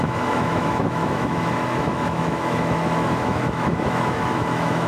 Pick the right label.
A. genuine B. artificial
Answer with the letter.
B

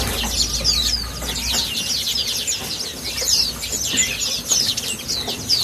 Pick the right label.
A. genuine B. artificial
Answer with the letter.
A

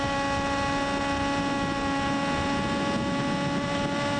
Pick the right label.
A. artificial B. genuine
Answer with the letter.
B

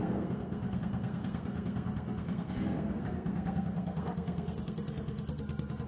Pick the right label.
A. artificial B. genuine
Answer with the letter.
A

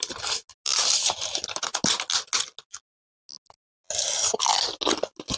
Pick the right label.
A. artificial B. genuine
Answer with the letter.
B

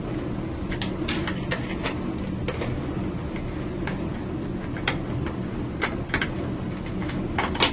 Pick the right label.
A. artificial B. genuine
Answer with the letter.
B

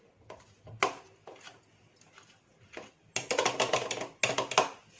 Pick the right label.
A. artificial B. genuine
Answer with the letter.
B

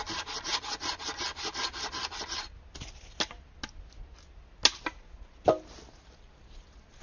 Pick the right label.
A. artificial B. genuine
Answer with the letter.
B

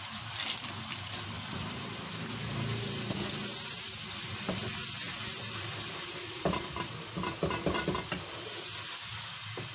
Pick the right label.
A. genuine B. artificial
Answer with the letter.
A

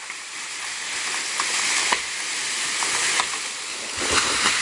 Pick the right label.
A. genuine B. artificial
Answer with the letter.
A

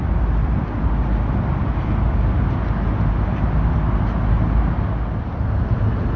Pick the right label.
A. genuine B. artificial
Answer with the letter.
A